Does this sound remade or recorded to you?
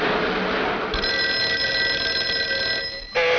recorded